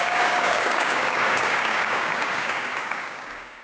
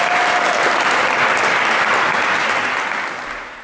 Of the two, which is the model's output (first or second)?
first